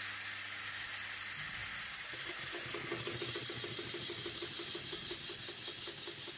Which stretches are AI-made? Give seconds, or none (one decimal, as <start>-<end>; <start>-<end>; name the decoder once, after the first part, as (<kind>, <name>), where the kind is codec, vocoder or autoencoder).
none